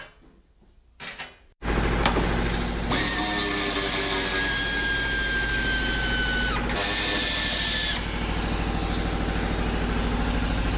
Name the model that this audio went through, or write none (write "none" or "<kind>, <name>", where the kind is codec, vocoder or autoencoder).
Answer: none